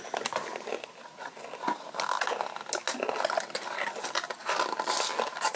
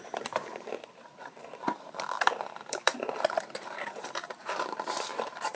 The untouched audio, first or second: first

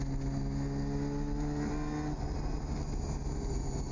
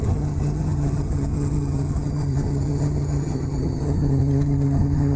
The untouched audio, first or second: first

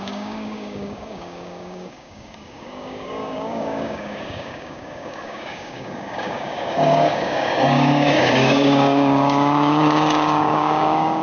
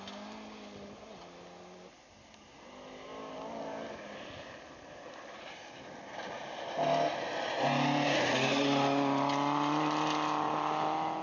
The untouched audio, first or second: second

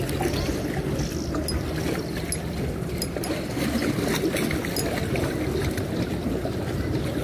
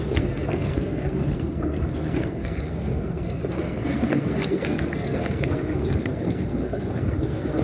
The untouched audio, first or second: first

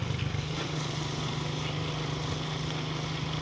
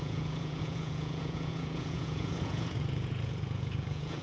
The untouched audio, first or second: first